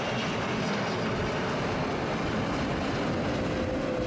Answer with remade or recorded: recorded